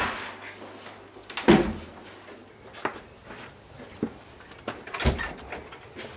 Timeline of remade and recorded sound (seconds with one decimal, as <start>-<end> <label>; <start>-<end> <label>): 0.0-6.2 recorded